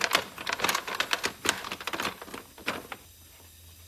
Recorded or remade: recorded